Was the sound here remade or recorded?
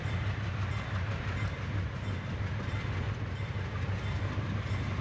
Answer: recorded